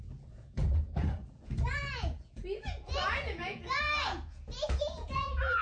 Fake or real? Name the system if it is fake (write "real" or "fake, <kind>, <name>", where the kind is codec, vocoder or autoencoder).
fake, vocoder, Vocos